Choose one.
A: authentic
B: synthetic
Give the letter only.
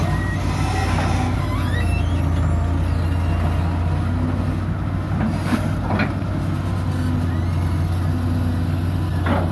A